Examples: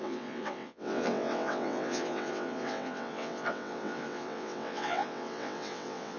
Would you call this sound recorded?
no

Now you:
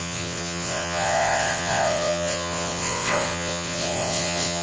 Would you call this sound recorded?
no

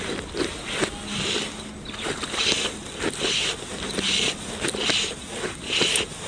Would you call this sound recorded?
yes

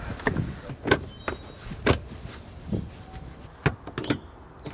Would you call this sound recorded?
yes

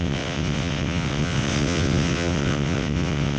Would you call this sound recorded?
no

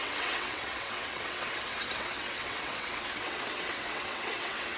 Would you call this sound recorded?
no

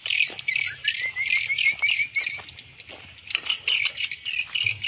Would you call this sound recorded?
yes